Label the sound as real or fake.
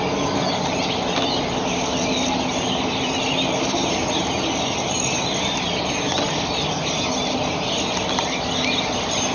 real